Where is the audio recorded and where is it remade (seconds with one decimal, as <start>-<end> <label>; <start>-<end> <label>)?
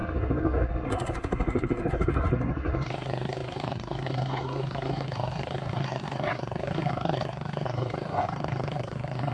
0.0-9.3 remade